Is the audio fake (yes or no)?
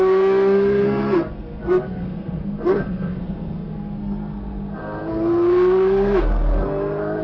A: yes